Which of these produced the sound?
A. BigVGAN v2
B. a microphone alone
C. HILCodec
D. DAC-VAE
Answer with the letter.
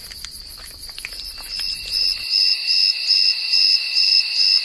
B